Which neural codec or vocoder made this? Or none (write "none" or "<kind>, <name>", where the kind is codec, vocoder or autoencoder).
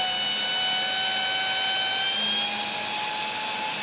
none